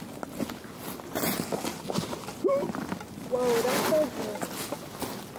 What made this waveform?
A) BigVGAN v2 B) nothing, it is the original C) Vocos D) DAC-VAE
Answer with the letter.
B